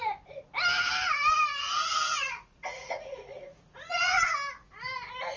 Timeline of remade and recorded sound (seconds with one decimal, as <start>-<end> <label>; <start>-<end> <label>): 0.0-1.6 recorded; 1.6-4.2 remade; 4.2-5.4 recorded